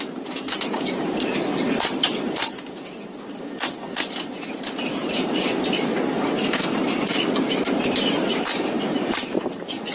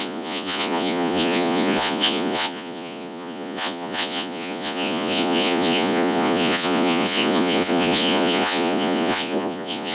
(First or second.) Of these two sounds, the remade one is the second